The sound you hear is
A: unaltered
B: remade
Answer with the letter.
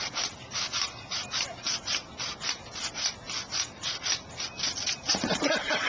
A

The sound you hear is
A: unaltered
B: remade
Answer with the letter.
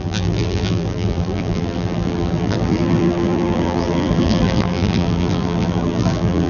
B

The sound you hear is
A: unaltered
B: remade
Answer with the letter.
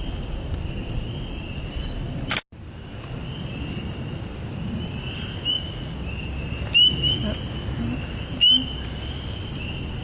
A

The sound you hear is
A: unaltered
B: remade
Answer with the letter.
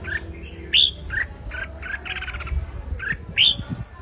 A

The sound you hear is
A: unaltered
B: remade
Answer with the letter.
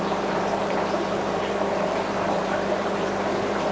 B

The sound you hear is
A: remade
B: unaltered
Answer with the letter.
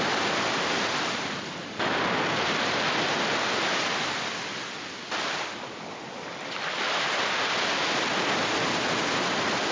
B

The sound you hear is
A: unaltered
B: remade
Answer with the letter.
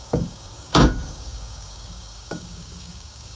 B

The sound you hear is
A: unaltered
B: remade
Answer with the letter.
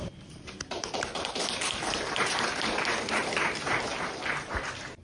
B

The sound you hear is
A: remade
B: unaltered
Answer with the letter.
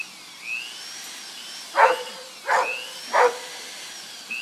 B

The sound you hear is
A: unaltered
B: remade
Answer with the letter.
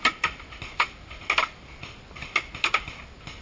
A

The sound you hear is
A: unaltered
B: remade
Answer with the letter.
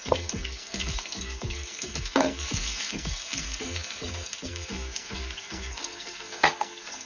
B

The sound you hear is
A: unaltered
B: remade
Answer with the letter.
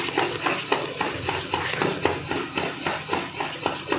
A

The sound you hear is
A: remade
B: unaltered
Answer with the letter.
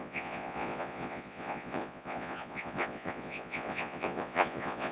A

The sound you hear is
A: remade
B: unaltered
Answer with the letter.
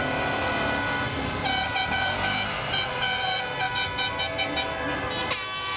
B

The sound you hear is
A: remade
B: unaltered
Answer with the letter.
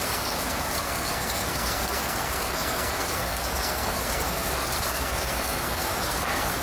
A